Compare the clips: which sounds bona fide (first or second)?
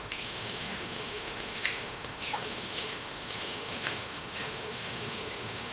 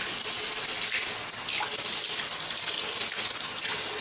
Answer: second